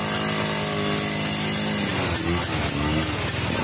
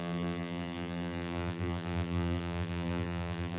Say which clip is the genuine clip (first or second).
first